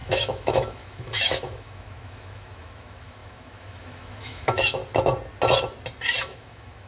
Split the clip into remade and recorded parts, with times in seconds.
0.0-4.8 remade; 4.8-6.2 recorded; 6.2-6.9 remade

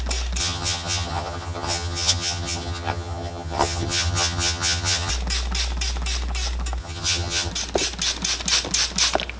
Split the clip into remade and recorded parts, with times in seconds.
0.0-0.4 recorded; 0.4-5.1 remade; 5.1-6.8 recorded; 6.8-7.5 remade; 7.5-9.4 recorded

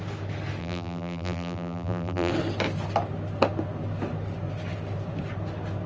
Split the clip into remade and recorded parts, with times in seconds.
0.0-0.6 recorded; 0.6-2.3 remade; 2.3-5.9 recorded

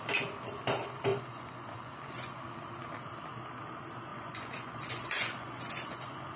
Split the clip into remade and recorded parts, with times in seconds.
0.0-1.1 recorded; 1.1-2.4 remade; 2.4-4.1 recorded; 4.1-6.4 remade

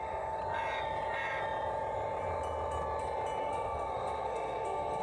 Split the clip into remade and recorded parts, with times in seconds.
0.0-0.4 remade; 0.4-3.4 recorded; 3.4-5.0 remade